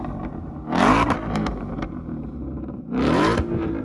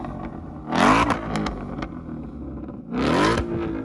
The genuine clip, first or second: second